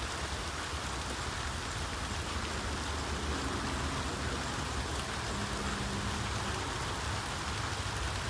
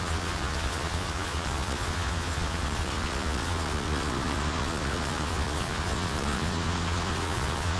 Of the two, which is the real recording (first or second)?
first